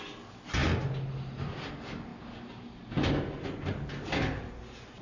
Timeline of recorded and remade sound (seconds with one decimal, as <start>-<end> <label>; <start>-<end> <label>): 0.0-5.0 recorded

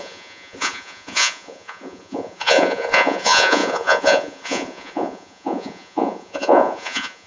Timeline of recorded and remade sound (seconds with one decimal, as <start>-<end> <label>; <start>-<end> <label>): 0.0-7.3 remade

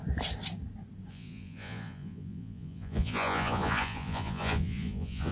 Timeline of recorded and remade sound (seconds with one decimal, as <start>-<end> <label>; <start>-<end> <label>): 0.0-1.1 recorded; 1.1-5.3 remade

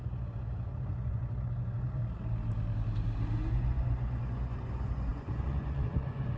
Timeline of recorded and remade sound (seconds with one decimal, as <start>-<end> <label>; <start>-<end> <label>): 0.0-2.0 remade; 2.0-3.5 recorded; 3.5-6.4 remade

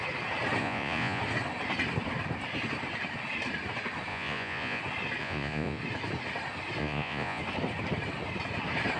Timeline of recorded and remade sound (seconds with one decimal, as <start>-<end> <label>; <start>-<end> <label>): 0.0-0.6 recorded; 0.6-1.2 remade; 1.2-4.1 recorded; 4.1-4.8 remade; 4.8-5.2 recorded; 5.2-5.8 remade; 5.8-6.8 recorded; 6.8-7.4 remade; 7.4-9.0 recorded